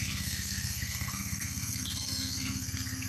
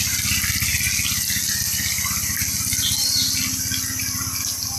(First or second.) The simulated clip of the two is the first